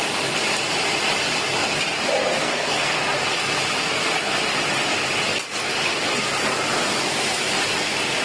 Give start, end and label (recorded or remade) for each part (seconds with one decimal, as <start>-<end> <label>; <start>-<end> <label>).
0.0-2.4 recorded; 2.4-3.0 remade; 3.0-8.2 recorded